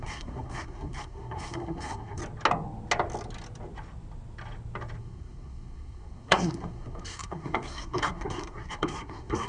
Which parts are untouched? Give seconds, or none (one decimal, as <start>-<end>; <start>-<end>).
2.2-5.0